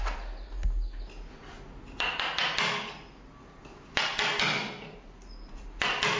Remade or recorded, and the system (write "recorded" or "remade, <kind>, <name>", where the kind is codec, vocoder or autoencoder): recorded